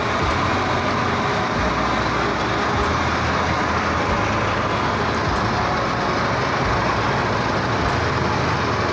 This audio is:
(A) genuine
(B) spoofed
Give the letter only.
A